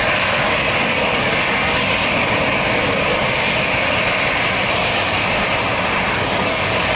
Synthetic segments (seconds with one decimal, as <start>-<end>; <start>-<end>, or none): 0.0-2.0; 4.7-5.2; 6.1-7.0

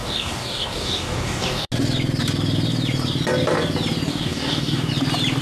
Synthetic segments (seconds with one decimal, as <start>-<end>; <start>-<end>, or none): 0.0-1.7; 4.1-4.9

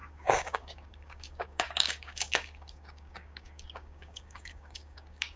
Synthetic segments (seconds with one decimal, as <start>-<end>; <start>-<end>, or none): 0.0-5.4

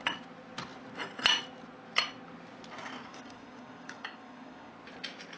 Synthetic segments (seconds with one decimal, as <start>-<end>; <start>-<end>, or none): 3.1-4.7

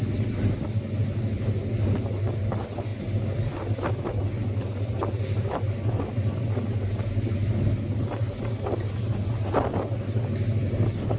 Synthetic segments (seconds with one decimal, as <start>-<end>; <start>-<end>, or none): none

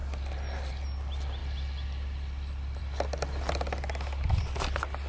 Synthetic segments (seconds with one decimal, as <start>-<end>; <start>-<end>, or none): none

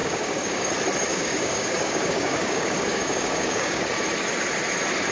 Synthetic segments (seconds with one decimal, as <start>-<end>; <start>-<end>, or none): 0.0-0.7; 1.1-3.8